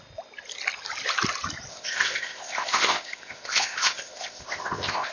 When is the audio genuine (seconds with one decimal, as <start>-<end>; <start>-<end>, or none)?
0.0-1.7